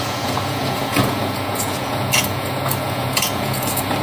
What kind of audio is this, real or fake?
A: fake